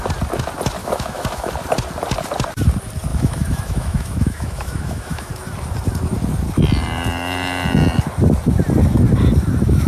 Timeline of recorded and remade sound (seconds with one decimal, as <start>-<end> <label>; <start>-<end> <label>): 0.0-0.8 recorded; 0.8-1.5 remade; 1.5-3.1 recorded; 3.1-5.3 remade; 5.3-9.9 recorded